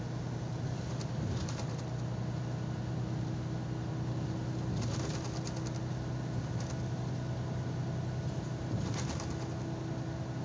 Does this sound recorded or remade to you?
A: recorded